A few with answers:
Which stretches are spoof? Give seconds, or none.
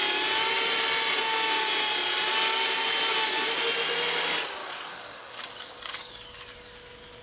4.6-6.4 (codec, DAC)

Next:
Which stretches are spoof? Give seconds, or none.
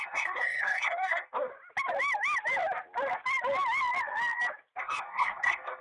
0.0-1.5 (codec, SNAC); 4.8-5.8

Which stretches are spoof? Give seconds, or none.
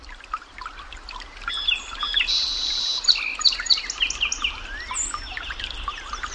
0.0-2.9 (vocoder, BigVGAN v2); 5.7-6.3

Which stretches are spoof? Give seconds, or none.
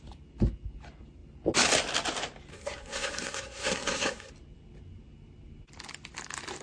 2.5-4.3 (codec, SNAC)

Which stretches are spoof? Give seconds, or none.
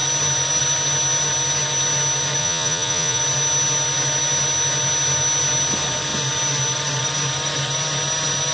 2.4-3.2 (vocoder, Vocos)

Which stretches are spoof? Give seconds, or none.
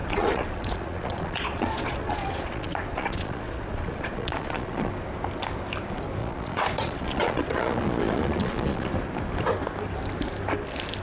0.0-4.9 (vocoder, Vocos); 6.2-8.9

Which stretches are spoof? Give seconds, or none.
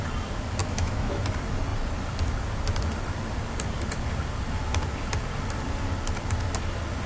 0.6-1.2 (autoencoder, DAC-VAE)